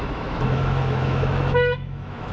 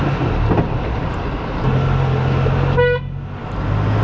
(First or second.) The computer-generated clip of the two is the first